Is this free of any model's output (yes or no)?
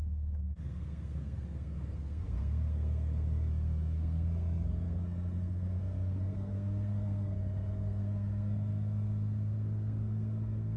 no